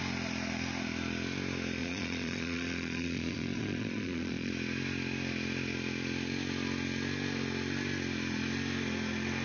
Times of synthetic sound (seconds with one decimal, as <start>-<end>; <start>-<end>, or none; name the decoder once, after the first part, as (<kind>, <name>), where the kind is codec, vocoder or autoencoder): 1.8-4.5 (vocoder, Vocos)